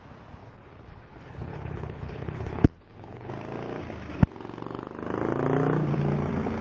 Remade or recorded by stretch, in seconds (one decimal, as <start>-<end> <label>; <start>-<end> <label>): 0.0-0.4 recorded; 0.4-3.3 remade; 3.3-6.6 recorded